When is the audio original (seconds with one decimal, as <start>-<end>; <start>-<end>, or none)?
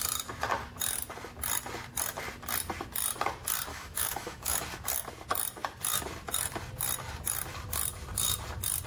0.0-3.7; 4.6-8.9